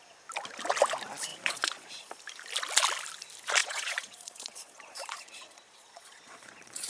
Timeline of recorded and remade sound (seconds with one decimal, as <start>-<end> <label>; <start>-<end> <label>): 0.0-1.3 recorded; 1.3-2.2 remade; 2.2-3.6 recorded; 3.6-6.9 remade